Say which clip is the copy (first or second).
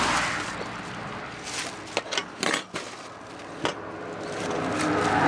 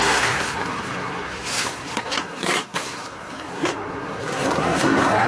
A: second